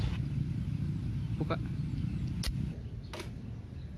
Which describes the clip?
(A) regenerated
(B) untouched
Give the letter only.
B